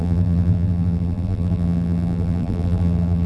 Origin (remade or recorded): remade